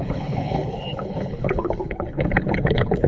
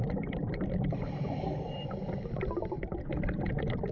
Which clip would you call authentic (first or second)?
second